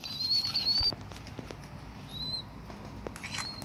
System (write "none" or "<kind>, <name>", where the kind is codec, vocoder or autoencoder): none